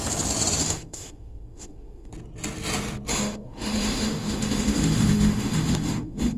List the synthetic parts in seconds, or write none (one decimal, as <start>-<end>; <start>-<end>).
0.6-2.1; 3.1-6.4